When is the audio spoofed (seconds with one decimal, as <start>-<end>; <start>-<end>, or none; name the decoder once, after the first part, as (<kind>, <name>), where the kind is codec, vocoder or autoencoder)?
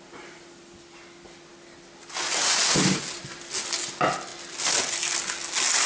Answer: none